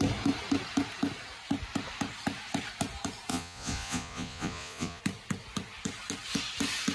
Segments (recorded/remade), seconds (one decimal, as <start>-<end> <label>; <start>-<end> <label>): 0.0-3.3 recorded; 3.3-5.0 remade; 5.0-6.9 recorded